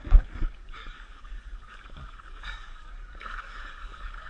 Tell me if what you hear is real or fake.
fake